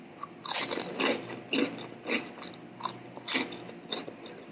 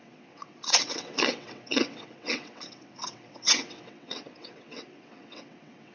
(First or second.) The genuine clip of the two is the first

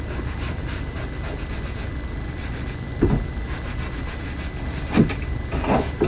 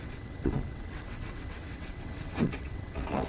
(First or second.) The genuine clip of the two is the first